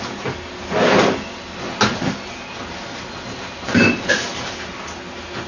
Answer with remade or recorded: recorded